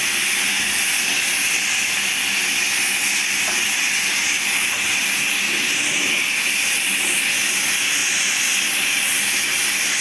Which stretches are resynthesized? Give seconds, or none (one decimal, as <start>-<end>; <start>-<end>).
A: none